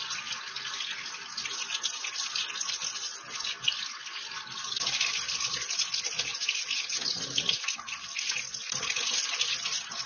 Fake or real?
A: real